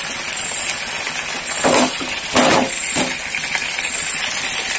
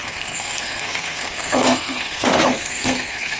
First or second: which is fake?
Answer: second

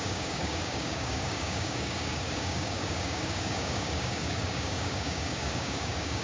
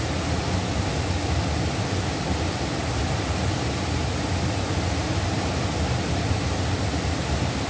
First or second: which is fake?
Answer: first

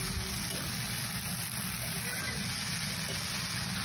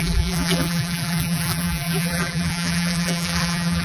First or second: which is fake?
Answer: second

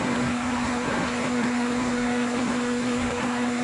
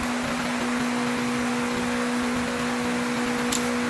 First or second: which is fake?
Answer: first